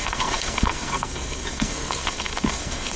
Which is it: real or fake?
fake